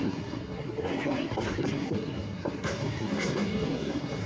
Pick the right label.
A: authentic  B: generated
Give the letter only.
B